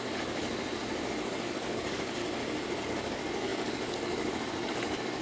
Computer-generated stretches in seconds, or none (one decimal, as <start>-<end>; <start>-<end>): 0.0-0.4; 1.2-2.2; 2.8-5.2